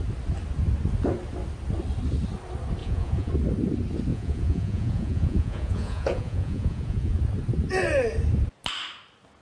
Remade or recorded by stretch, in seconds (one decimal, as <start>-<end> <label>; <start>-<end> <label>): 0.0-2.8 recorded; 2.8-3.3 remade; 3.3-4.1 recorded; 4.1-7.2 remade; 7.2-9.4 recorded